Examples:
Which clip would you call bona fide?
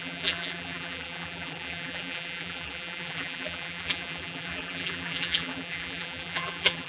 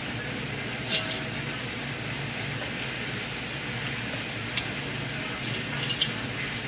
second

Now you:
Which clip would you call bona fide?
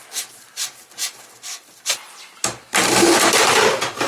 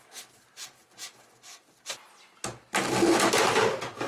second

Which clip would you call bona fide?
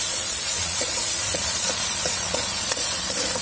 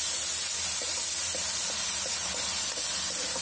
second